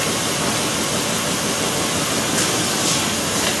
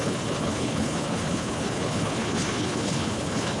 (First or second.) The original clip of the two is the first